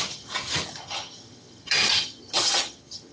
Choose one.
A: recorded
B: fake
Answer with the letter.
B